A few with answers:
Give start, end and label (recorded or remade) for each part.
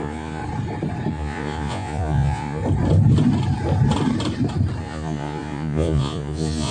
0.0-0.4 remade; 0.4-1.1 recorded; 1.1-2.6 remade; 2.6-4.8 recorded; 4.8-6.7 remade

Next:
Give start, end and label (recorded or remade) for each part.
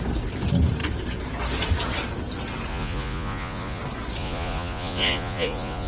0.0-2.7 recorded; 2.7-3.8 remade; 3.8-4.2 recorded; 4.2-5.9 remade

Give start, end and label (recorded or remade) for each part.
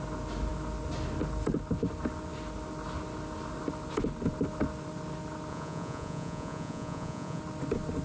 0.0-5.5 recorded; 5.5-7.4 remade; 7.4-8.0 recorded